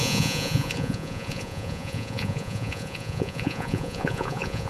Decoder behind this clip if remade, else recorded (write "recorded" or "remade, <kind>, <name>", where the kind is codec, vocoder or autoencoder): remade, vocoder, Vocos